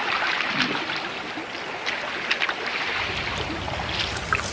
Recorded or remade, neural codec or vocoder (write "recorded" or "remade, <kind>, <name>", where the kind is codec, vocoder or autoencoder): recorded